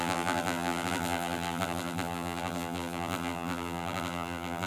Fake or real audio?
fake